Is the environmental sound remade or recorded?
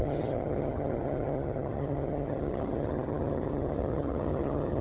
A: remade